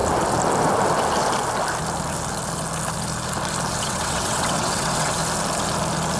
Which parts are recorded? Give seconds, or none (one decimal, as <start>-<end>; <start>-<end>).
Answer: 0.0-3.7; 5.2-6.2